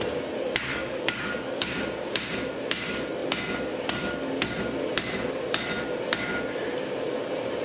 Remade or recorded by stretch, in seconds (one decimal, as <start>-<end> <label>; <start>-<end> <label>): 0.0-0.7 recorded; 0.7-1.7 remade; 1.7-7.6 recorded